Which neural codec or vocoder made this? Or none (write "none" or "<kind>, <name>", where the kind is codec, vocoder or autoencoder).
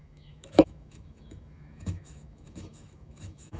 autoencoder, DAC-VAE